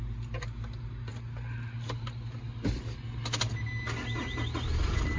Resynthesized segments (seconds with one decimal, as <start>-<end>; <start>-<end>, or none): none